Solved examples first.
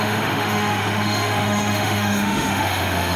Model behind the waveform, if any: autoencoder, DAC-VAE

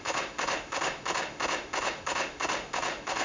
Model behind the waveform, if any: autoencoder, DAC-VAE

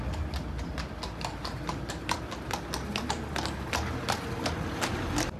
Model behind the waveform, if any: none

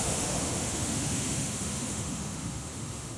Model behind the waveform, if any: autoencoder, DAC-VAE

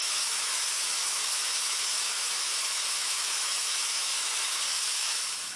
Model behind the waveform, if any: autoencoder, DAC-VAE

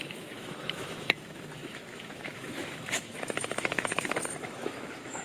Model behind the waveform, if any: autoencoder, DAC-VAE